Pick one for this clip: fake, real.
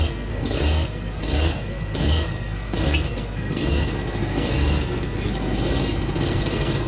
fake